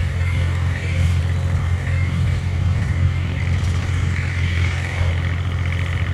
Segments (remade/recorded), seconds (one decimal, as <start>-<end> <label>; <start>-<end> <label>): 0.0-1.2 remade; 1.2-1.6 recorded; 1.6-3.4 remade; 3.4-3.8 recorded; 3.8-5.1 remade; 5.1-6.1 recorded